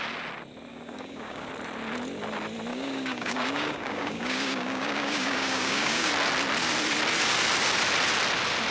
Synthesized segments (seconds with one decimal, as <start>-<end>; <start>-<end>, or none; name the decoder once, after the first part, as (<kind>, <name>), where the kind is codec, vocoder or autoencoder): 0.7-1.5 (codec, DAC); 2.7-6.1